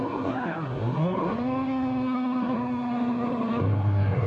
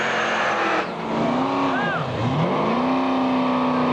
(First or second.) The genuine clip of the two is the second